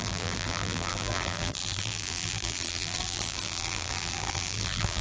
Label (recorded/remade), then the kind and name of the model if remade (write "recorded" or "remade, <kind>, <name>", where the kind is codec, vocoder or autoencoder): remade, vocoder, BigVGAN v2